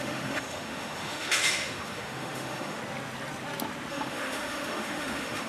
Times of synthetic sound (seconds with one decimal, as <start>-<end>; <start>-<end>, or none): 0.0-2.8; 3.9-5.5